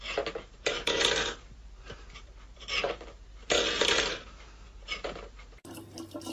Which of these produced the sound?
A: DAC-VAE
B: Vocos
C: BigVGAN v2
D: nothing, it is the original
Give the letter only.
C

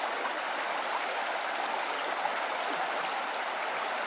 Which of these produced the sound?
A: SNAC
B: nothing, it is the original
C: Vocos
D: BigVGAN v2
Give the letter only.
B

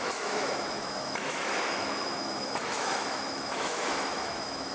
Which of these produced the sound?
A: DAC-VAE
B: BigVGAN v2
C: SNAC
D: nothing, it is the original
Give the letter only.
A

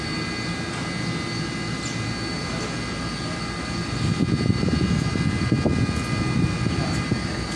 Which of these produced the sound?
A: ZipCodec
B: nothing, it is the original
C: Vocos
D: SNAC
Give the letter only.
B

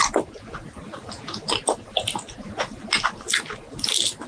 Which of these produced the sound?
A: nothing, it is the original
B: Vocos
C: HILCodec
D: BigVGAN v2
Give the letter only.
A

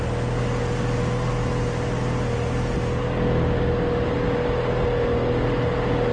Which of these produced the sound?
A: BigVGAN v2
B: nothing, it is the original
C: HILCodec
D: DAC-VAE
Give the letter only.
B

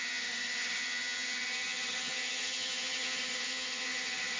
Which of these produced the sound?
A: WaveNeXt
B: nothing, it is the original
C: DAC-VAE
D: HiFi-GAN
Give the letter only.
D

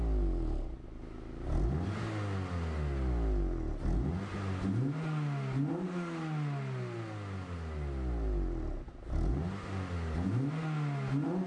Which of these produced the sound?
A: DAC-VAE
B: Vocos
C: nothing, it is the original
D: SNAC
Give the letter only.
C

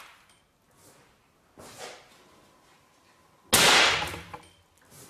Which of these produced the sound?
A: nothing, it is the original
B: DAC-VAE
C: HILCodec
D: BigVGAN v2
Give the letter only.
A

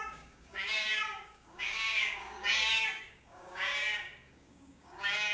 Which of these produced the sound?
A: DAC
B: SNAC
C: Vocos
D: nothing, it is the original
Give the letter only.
A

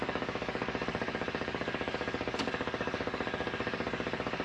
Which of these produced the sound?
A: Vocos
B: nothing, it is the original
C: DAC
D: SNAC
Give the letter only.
C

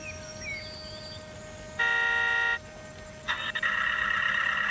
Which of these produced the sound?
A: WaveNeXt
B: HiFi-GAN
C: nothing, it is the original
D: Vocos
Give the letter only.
C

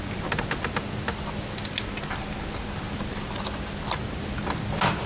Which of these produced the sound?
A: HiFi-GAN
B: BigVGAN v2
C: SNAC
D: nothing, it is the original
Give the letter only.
D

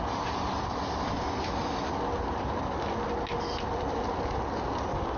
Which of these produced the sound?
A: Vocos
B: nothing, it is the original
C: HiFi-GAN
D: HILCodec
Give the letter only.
B